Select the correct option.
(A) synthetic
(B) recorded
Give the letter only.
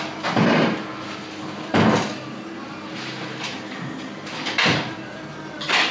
B